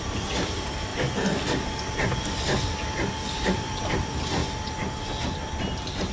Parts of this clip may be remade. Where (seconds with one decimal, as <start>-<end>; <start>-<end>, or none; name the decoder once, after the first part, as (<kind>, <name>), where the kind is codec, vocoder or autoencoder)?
0.0-4.4 (vocoder, BigVGAN v2); 5.4-6.1